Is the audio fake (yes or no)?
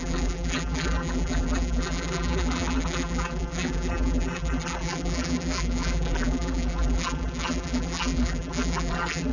yes